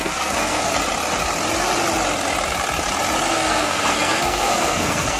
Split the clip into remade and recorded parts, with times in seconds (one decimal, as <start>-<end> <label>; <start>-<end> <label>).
0.0-0.7 remade; 0.7-3.3 recorded; 3.3-5.2 remade